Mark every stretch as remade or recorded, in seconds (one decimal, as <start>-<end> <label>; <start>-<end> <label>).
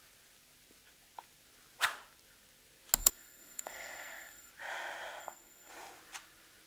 0.0-3.0 recorded; 3.0-4.5 remade; 4.5-5.2 recorded; 5.2-5.7 remade; 5.7-6.7 recorded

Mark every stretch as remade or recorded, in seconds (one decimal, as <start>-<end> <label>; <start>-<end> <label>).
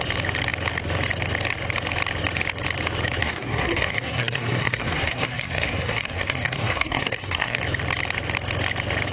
0.0-3.2 recorded; 3.2-7.6 remade; 7.6-9.1 recorded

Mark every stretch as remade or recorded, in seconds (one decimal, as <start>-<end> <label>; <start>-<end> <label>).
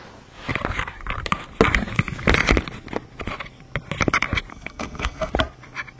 0.0-4.5 recorded; 4.5-5.3 remade; 5.3-6.0 recorded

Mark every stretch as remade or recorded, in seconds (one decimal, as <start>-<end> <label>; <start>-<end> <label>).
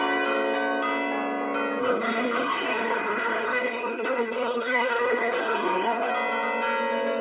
0.0-1.8 recorded; 1.8-6.1 remade; 6.1-7.2 recorded